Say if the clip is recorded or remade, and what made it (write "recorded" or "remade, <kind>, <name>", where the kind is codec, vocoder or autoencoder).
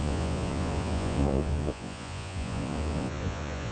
remade, vocoder, Vocos